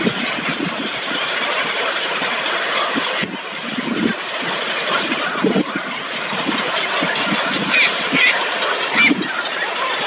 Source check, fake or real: real